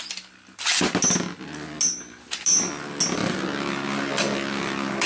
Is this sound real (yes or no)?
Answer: yes